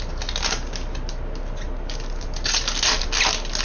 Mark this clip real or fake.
real